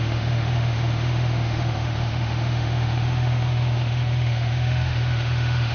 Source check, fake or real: fake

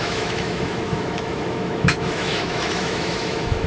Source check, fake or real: fake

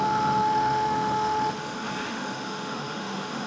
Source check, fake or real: fake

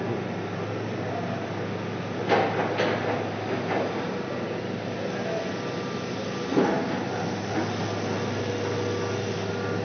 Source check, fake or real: real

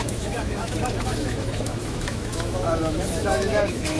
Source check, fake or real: fake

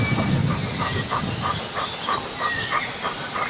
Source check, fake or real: real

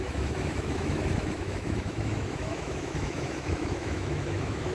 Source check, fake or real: fake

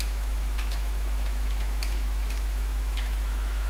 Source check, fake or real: fake